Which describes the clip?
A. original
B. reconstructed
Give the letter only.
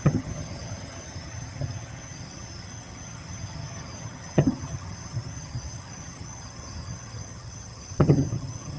B